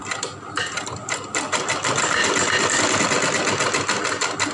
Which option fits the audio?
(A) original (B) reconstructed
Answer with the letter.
A